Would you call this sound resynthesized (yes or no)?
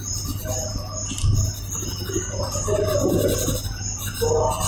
no